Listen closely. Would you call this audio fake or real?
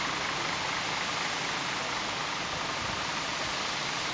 real